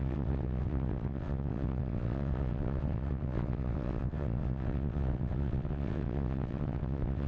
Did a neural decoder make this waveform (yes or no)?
yes